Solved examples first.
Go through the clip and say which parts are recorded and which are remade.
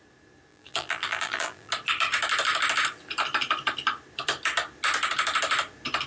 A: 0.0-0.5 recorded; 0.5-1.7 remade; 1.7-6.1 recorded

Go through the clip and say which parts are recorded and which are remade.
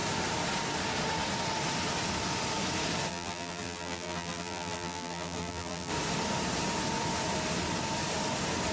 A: 0.0-3.1 recorded; 3.1-5.9 remade; 5.9-8.7 recorded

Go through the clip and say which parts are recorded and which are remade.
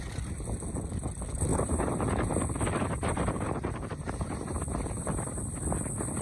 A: 0.0-1.5 recorded; 1.5-2.4 remade; 2.4-2.8 recorded; 2.8-5.4 remade; 5.4-6.2 recorded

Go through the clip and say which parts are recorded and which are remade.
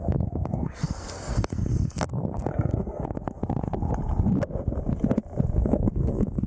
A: 0.0-3.4 remade; 3.4-5.6 recorded; 5.6-6.5 remade